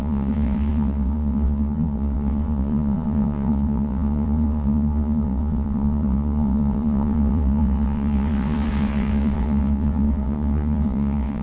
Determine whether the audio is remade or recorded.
remade